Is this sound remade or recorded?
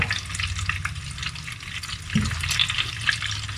recorded